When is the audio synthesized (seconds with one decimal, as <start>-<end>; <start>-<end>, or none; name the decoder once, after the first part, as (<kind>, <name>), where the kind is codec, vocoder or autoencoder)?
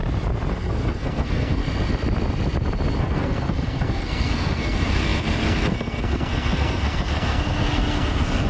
0.5-1.6 (codec, SNAC); 3.0-8.5